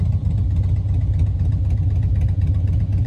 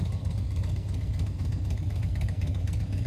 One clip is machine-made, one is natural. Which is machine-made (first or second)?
second